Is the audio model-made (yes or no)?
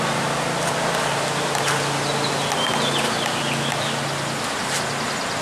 no